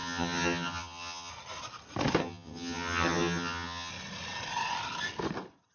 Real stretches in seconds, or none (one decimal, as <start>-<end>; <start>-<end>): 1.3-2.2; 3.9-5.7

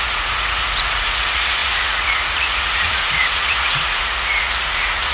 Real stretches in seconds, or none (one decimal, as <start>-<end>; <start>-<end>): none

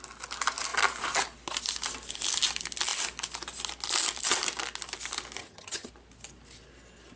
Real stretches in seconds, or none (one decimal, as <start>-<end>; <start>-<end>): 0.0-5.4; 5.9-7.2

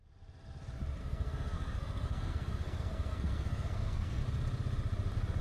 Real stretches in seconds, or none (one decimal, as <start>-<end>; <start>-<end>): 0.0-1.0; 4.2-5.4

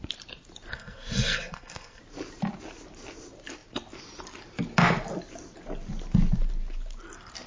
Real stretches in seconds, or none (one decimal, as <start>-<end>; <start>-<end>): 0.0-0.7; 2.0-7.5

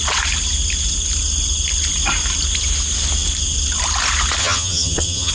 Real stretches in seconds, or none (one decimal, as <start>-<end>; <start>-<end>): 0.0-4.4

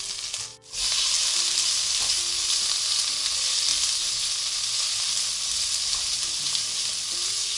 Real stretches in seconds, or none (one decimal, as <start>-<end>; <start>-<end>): 0.0-7.6

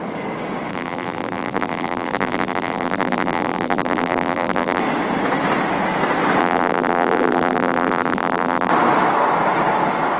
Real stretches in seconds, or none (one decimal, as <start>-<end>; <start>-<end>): 0.0-0.7; 4.8-6.4; 8.7-10.2